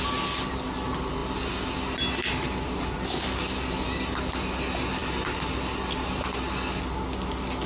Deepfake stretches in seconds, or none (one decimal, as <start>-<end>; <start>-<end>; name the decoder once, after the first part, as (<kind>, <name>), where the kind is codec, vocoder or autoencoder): none